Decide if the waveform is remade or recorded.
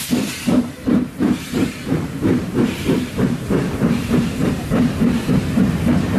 remade